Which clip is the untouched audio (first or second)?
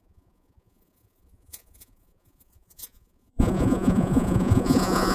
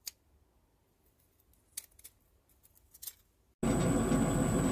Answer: second